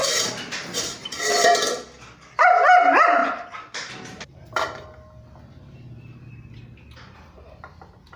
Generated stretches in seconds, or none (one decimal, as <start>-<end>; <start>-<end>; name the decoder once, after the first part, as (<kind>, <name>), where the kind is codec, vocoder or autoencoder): 0.0-1.5 (vocoder, BigVGAN v2); 3.2-4.8